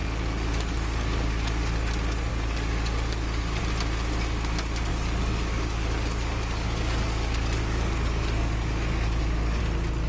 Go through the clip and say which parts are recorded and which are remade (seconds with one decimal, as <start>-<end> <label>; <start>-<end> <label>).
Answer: 0.0-1.6 remade; 1.6-2.3 recorded; 2.3-3.6 remade; 3.6-4.9 recorded; 4.9-9.6 remade; 9.6-10.1 recorded